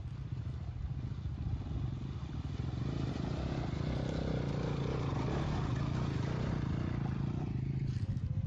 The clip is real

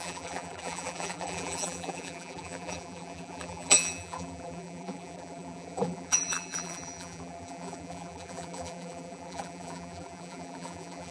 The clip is fake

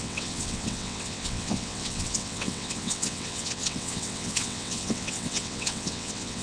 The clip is fake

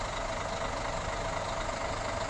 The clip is real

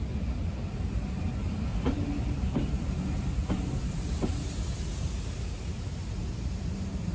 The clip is real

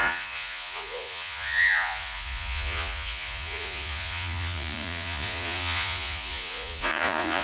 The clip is fake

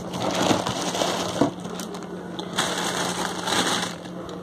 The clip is fake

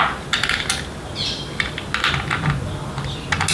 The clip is real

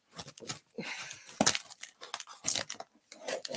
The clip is real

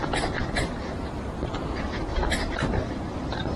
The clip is fake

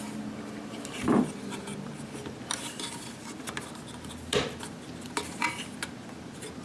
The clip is real